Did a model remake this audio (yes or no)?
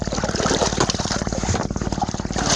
yes